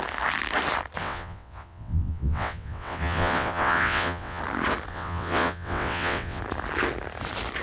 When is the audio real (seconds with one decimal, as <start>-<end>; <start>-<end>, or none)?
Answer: 0.0-1.0; 4.4-4.9; 6.4-7.6